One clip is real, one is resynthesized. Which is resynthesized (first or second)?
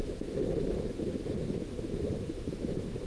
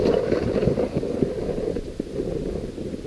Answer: first